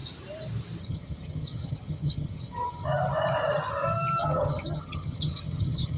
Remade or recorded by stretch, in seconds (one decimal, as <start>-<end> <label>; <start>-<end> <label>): 0.0-0.8 recorded; 0.8-2.9 remade; 2.9-4.2 recorded; 4.2-6.0 remade